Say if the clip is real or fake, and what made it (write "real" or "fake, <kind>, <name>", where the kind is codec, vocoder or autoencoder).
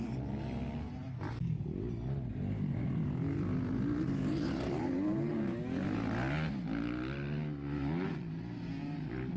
real